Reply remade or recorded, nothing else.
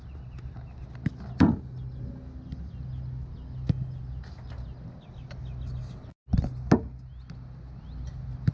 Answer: recorded